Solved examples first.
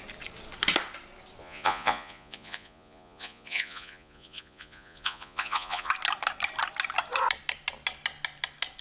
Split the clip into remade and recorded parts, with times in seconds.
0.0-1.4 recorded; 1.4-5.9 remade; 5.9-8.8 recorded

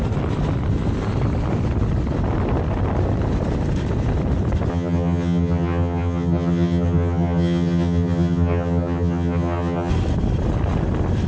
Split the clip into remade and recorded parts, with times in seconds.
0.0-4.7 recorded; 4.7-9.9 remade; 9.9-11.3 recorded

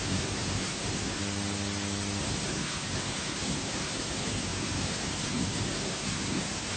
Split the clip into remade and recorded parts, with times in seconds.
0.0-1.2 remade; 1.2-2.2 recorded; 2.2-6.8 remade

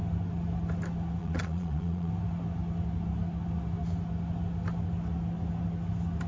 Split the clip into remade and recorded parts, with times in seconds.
0.0-1.2 recorded; 1.2-2.1 remade; 2.1-6.3 recorded

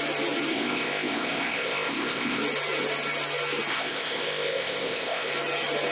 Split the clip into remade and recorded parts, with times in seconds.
0.0-0.5 recorded; 0.5-2.4 remade; 2.4-3.7 recorded; 3.7-5.3 remade; 5.3-5.9 recorded

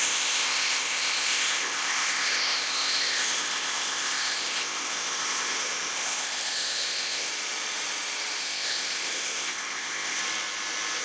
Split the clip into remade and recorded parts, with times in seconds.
0.0-7.3 remade; 7.3-8.4 recorded; 8.4-10.2 remade; 10.2-11.0 recorded